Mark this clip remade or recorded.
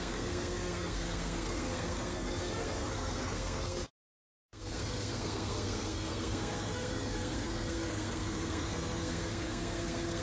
remade